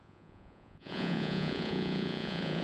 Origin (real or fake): fake